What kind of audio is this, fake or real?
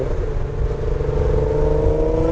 real